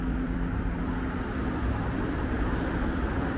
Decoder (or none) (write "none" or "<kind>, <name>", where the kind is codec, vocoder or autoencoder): vocoder, BigVGAN v2